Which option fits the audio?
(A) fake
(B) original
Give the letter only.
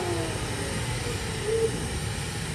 B